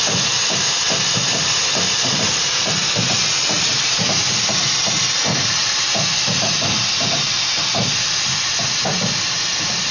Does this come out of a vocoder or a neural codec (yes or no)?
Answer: yes